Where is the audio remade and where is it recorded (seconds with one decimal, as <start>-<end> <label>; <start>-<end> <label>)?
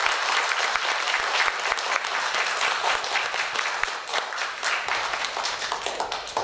0.0-2.0 remade; 2.0-6.4 recorded